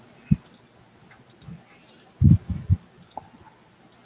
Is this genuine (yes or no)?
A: yes